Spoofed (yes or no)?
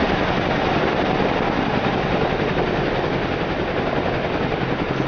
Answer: no